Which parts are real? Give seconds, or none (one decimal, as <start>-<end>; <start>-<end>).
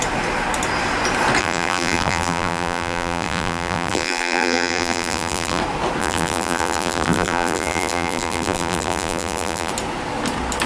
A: 0.0-1.4; 5.6-6.0; 9.7-10.7